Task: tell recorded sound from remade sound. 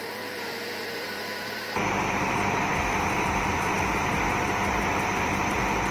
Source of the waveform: remade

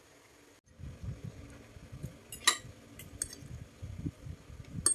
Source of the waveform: recorded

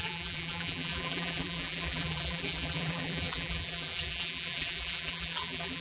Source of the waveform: remade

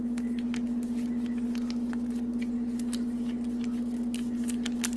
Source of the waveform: recorded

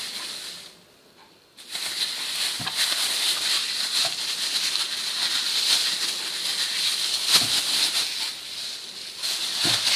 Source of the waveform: recorded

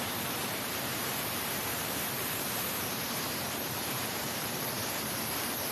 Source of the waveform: remade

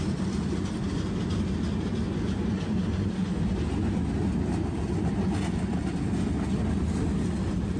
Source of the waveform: recorded